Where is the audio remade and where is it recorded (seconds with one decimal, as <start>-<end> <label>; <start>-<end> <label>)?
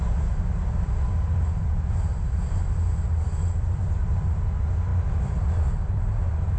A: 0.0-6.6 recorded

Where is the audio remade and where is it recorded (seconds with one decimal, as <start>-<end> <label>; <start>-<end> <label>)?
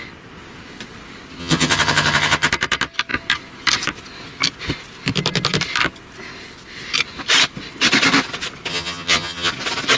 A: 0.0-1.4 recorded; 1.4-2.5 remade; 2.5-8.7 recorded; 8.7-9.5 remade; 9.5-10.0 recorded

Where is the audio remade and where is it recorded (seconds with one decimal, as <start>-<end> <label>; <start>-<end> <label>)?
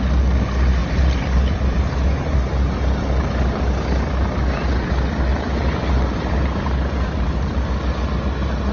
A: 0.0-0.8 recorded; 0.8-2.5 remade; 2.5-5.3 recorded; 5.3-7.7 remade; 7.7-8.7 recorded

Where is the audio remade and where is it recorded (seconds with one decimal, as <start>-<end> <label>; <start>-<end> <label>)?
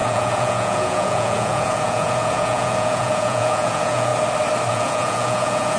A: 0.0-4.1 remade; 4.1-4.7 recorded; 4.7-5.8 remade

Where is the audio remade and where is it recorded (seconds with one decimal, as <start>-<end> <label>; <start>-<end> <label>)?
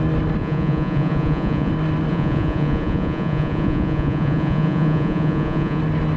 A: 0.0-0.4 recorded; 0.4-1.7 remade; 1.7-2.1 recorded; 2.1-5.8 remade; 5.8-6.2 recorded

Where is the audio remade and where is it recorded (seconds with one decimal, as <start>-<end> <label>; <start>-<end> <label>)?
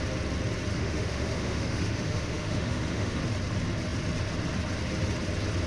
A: 0.0-0.7 recorded; 0.7-3.2 remade; 3.2-5.7 recorded